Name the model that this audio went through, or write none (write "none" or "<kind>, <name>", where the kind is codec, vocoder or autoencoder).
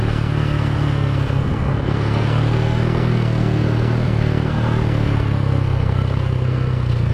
codec, SNAC